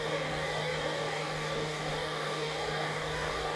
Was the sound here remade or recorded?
remade